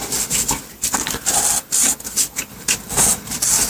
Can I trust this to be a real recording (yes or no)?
yes